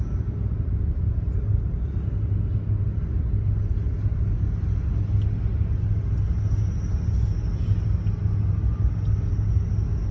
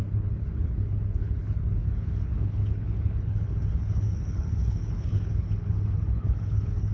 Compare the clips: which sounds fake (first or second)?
second